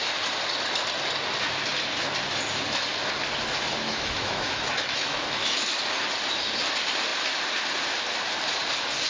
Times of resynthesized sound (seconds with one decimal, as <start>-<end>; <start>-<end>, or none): 3.9-5.6